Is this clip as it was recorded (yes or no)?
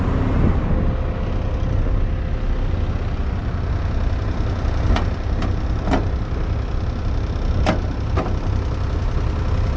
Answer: yes